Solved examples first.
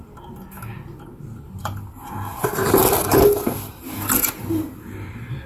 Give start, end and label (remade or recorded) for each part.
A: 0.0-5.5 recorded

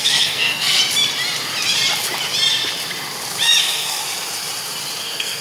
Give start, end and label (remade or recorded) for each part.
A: 0.0-0.8 remade; 0.8-3.6 recorded; 3.6-4.0 remade; 4.0-5.0 recorded; 5.0-5.4 remade

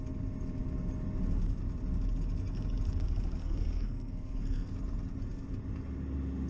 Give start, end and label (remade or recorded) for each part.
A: 0.0-3.4 recorded; 3.4-4.7 remade; 4.7-6.5 recorded